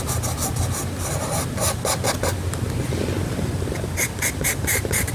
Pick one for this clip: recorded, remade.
recorded